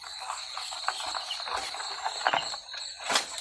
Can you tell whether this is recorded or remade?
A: recorded